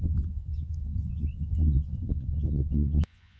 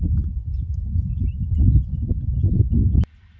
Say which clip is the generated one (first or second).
first